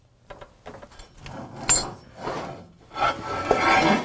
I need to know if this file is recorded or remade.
recorded